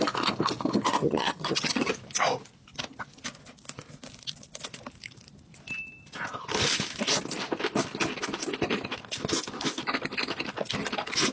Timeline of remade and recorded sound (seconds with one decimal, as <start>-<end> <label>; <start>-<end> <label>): 0.0-1.0 recorded; 1.0-1.9 remade; 1.9-11.3 recorded

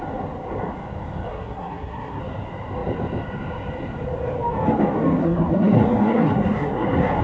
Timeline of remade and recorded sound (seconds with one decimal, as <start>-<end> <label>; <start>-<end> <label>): 0.0-1.3 recorded; 1.3-2.2 remade; 2.2-5.2 recorded; 5.2-7.2 remade